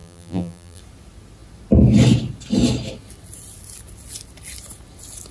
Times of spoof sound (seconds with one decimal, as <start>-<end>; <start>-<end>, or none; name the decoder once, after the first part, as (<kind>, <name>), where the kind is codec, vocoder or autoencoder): 0.0-0.8 (vocoder, BigVGAN v2)